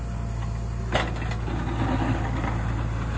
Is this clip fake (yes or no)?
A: no